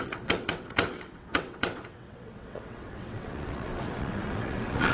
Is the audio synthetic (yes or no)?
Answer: yes